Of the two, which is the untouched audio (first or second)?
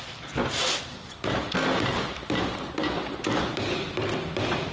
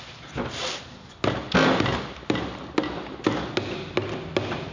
second